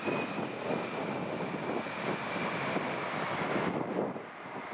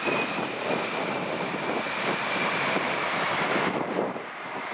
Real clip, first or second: first